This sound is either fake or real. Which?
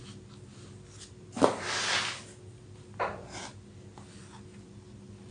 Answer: real